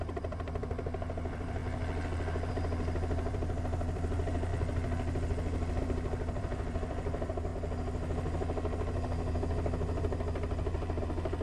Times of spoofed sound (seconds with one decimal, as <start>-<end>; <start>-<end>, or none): 0.0-1.6; 2.5-4.5; 5.8-7.5; 11.0-11.4